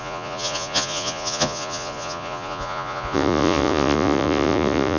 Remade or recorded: remade